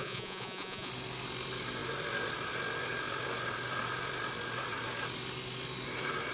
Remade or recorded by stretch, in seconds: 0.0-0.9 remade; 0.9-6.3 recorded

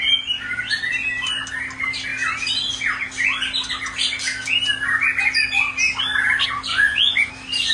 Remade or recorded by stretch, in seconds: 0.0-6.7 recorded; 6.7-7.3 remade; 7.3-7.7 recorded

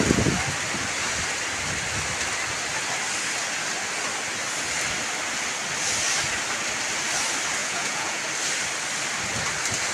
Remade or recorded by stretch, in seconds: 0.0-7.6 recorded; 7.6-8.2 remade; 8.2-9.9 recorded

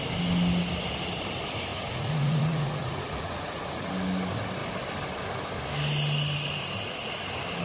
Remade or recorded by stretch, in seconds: 0.0-1.7 recorded; 1.7-3.9 remade; 3.9-7.6 recorded

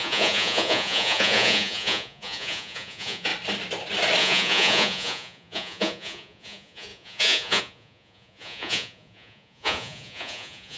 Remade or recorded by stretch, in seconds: 0.0-3.3 remade; 3.3-4.2 recorded; 4.2-10.8 remade